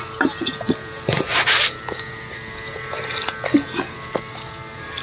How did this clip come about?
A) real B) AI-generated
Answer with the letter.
A